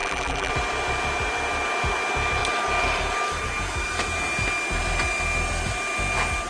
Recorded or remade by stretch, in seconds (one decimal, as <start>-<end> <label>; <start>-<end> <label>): 0.0-0.5 remade; 0.5-6.5 recorded